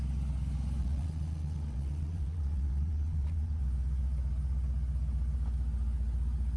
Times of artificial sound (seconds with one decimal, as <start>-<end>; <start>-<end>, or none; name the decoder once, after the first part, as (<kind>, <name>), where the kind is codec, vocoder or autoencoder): 0.8-3.6 (vocoder, Vocos)